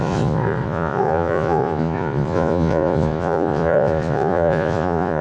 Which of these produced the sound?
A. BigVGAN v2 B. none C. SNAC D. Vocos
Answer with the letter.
D